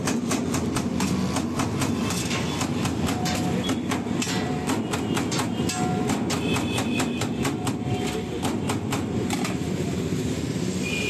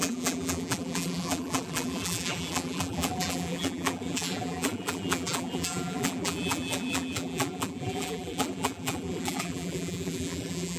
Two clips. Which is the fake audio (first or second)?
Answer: second